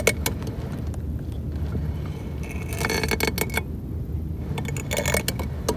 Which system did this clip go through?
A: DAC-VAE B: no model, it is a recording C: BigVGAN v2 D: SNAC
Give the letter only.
B